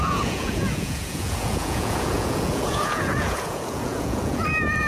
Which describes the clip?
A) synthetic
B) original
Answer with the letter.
A